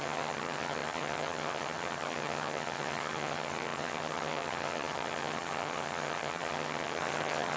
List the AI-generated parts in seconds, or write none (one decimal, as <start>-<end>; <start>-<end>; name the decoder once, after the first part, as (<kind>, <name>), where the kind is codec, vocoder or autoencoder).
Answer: 0.0-7.6 (vocoder, HiFi-GAN)